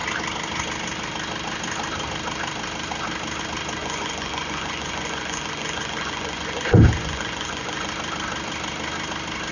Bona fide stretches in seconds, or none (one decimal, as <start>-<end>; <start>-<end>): 0.0-3.8; 7.9-9.5